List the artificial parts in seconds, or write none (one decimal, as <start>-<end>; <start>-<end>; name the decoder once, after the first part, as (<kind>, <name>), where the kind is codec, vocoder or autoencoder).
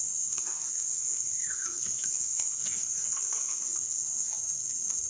0.0-5.1 (codec, SNAC)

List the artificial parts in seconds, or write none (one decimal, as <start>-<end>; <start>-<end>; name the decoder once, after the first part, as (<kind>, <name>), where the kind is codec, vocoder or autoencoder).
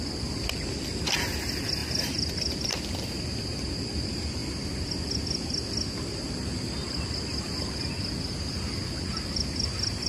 none